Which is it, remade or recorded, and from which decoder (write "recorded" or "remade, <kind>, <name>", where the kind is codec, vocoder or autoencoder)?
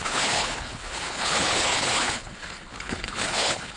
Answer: remade, codec, HILCodec